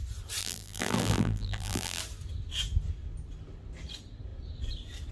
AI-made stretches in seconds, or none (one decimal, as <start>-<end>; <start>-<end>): 0.4-2.0